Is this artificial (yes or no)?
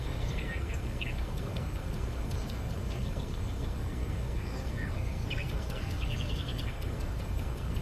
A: yes